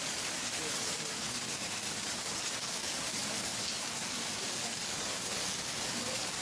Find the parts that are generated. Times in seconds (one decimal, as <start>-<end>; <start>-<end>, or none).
0.0-6.4